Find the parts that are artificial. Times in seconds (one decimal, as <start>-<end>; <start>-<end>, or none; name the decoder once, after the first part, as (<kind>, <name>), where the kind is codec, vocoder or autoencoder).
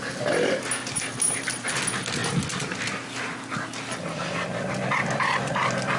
none